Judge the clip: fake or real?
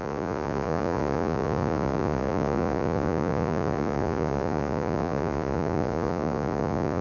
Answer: fake